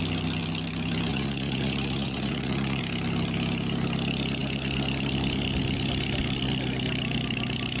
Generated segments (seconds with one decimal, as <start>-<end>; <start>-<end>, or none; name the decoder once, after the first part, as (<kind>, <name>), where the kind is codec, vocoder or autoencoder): 1.1-2.8 (vocoder, Vocos)